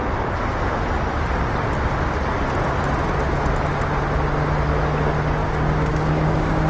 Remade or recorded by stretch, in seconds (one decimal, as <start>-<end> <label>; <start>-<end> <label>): 0.0-5.4 recorded; 5.4-6.7 remade